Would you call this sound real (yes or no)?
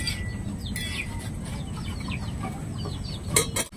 yes